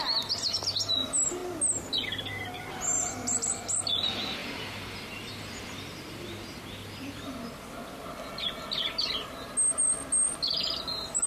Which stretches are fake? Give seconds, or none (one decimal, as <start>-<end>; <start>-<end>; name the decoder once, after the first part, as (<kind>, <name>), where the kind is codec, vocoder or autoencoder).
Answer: 4.4-6.6 (vocoder, BigVGAN v2)